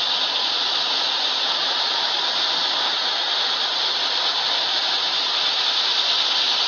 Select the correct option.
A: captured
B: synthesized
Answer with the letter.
A